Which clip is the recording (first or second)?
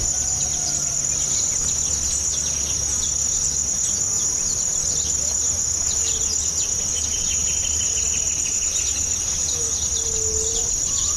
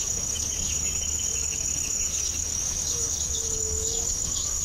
first